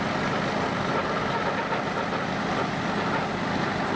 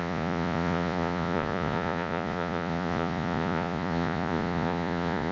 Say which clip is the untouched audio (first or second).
first